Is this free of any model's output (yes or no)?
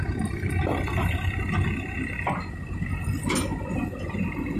yes